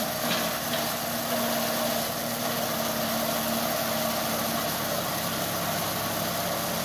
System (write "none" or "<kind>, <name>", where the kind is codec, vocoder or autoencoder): none